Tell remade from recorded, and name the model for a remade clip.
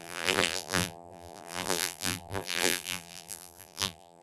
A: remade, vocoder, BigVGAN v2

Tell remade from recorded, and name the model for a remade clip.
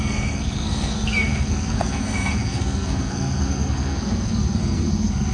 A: remade, codec, SNAC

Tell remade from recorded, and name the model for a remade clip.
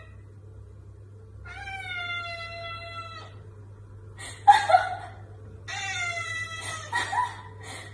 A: recorded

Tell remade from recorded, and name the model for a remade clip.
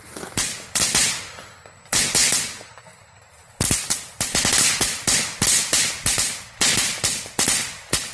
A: recorded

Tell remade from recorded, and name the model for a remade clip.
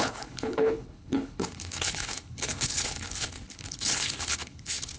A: remade, codec, HILCodec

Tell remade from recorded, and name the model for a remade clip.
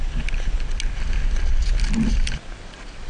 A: recorded